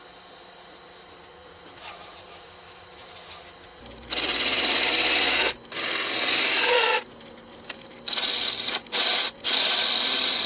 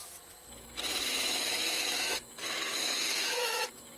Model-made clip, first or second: second